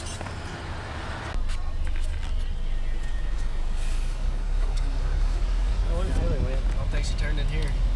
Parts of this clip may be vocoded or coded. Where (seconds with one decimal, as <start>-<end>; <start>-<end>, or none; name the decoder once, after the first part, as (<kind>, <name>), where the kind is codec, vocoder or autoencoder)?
3.1-5.7 (codec, DAC)